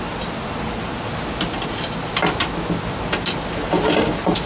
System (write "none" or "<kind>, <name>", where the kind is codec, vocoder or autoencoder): none